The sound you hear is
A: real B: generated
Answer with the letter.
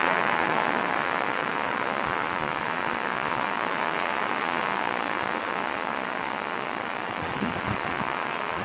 B